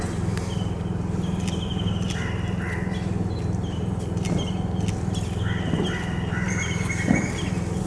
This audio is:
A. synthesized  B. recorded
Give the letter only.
B